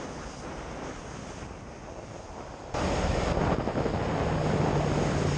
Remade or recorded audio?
recorded